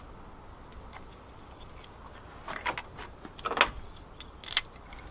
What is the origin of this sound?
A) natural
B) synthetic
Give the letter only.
A